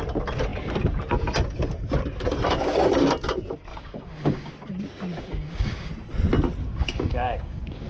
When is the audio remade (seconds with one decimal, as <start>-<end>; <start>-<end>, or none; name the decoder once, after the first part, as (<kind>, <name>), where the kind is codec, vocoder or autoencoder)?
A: 3.7-4.5 (codec, DAC); 5.1-5.9; 6.6-7.9